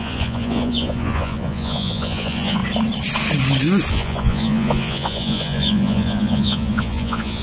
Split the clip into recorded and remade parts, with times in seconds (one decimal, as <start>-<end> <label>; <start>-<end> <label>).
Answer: 0.0-2.6 remade; 2.6-3.9 recorded; 3.9-7.4 remade